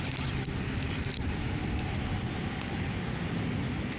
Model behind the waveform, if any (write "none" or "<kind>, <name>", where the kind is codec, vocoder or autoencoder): none